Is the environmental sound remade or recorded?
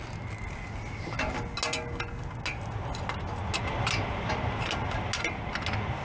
recorded